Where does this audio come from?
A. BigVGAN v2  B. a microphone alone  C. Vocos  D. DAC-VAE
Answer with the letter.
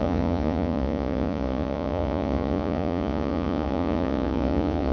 C